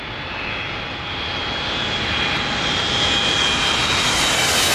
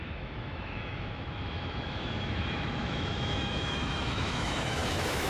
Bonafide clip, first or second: first